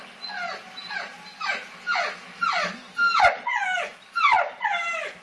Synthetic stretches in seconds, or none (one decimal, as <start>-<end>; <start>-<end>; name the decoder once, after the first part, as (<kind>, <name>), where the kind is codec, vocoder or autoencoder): none